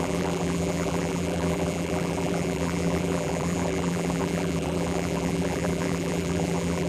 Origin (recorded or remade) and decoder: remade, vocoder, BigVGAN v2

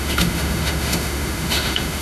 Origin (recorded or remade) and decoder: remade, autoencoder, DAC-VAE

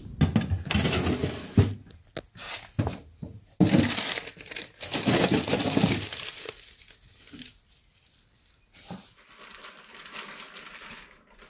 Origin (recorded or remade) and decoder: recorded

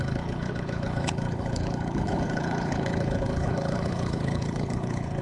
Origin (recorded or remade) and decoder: remade, codec, HILCodec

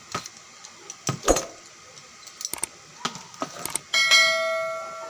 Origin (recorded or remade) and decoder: recorded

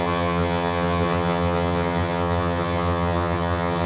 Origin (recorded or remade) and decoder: remade, vocoder, HiFi-GAN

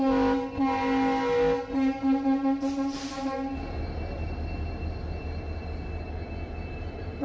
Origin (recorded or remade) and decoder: recorded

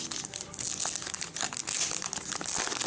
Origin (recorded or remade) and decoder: recorded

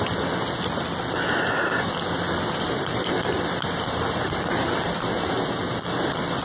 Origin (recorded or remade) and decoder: recorded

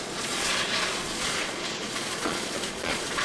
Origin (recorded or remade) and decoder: remade, vocoder, Vocos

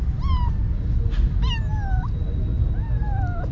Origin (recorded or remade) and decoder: recorded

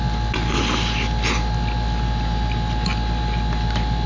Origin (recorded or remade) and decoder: recorded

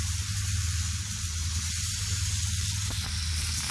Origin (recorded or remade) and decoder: recorded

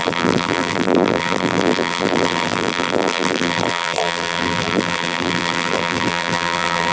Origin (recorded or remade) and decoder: remade, vocoder, BigVGAN v2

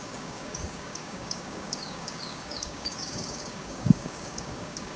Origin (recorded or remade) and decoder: remade, codec, DAC